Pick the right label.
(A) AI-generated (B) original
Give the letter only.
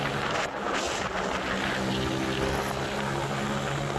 B